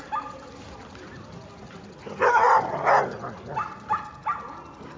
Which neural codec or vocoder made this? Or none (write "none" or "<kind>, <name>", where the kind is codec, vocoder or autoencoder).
none